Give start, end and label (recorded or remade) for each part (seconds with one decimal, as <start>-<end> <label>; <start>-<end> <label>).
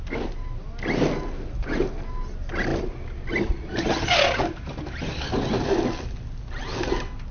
0.0-7.3 recorded